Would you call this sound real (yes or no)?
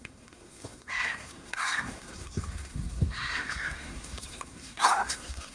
no